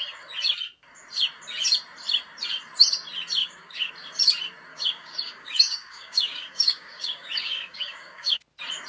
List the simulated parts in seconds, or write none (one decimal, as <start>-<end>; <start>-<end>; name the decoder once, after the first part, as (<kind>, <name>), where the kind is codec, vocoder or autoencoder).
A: 3.4-3.9 (codec, DAC); 4.7-8.4